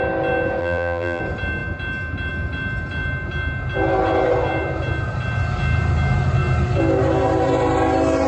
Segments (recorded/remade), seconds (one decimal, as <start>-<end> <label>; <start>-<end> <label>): 0.0-0.6 recorded; 0.6-1.2 remade; 1.2-8.3 recorded